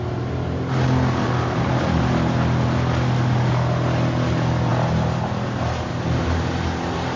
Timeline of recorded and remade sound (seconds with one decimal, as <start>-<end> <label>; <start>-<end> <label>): 0.0-7.2 recorded